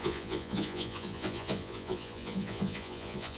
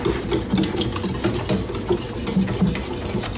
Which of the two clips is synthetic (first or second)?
first